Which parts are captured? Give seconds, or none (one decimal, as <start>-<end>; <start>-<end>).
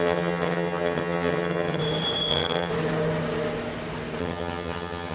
1.8-2.3; 2.7-4.2